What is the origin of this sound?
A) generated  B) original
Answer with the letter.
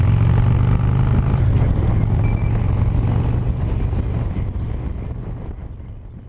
B